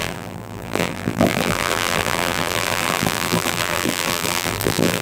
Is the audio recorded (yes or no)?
no